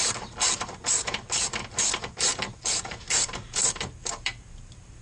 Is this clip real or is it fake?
fake